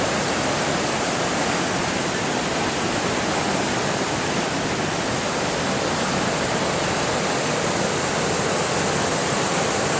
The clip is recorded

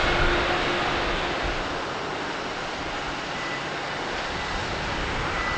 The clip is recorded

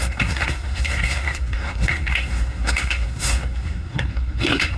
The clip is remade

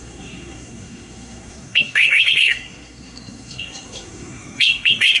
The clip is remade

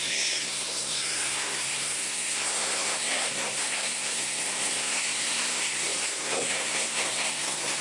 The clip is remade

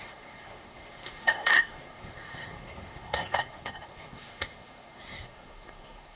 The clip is remade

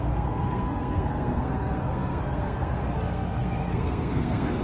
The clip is remade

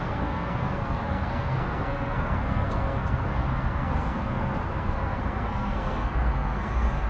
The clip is remade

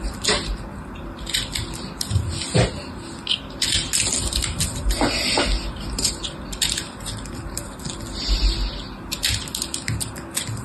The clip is recorded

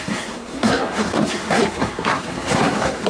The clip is remade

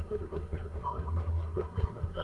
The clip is remade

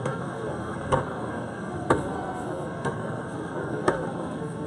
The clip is remade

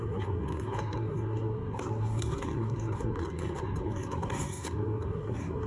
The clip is remade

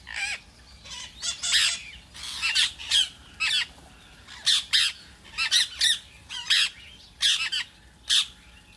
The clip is recorded